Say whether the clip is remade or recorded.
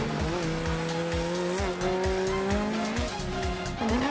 recorded